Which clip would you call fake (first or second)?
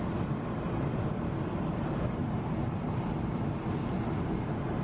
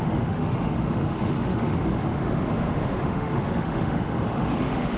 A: second